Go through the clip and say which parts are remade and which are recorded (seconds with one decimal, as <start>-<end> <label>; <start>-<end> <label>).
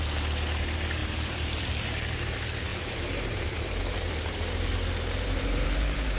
0.0-1.0 recorded; 1.0-1.6 remade; 1.6-2.7 recorded; 2.7-6.2 remade